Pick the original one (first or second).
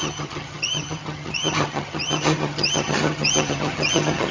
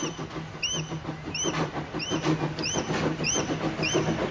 second